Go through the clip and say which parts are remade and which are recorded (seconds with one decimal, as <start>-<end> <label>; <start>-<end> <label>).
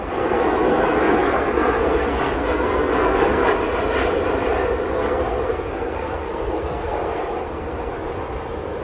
0.0-3.4 remade; 3.4-4.9 recorded; 4.9-7.9 remade; 7.9-8.8 recorded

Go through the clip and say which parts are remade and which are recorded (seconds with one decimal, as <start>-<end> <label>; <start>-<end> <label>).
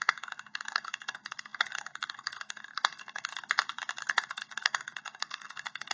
0.0-3.3 remade; 3.3-4.0 recorded; 4.0-5.9 remade